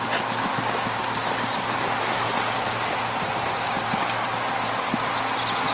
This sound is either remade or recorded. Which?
recorded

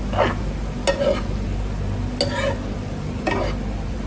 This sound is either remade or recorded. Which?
recorded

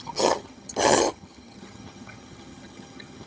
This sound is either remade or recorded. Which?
remade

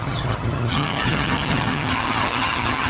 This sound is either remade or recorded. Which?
remade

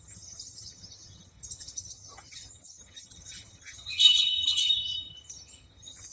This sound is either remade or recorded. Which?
remade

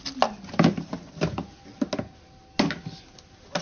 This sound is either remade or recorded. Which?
recorded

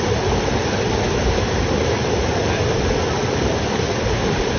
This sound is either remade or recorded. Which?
recorded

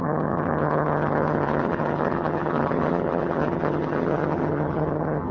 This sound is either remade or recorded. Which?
remade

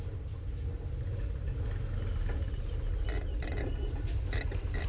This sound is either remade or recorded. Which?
recorded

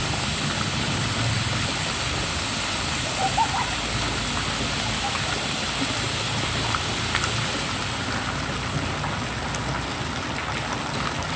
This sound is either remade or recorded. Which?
recorded